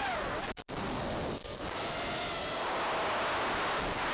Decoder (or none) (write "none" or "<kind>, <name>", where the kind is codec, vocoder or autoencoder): none